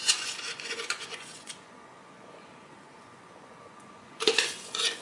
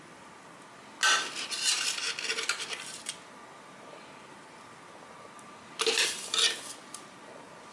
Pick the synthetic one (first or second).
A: first